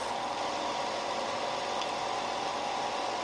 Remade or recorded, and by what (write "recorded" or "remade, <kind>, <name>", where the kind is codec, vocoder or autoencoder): recorded